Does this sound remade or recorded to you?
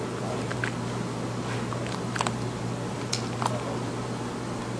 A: recorded